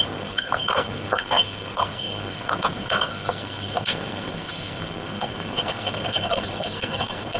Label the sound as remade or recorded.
remade